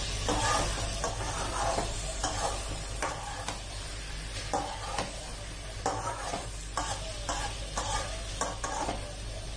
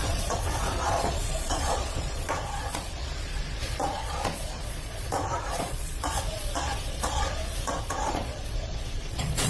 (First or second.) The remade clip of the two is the second